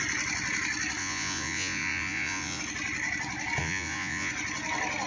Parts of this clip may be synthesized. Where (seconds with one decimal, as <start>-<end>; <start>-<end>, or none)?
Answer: 1.0-2.6; 3.6-4.3